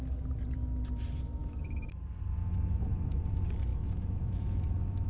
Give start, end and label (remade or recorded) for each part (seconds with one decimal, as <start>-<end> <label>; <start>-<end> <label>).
0.0-1.4 recorded; 1.4-2.0 remade; 2.0-2.4 recorded; 2.4-3.3 remade; 3.3-3.7 recorded; 3.7-5.1 remade